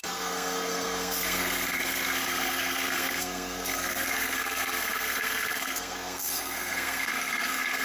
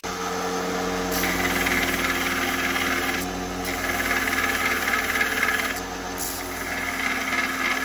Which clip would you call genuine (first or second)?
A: second